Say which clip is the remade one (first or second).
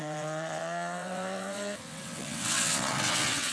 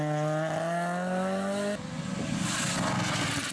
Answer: first